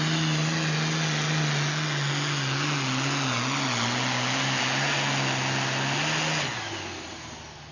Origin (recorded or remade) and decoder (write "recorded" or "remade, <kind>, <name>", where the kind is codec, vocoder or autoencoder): recorded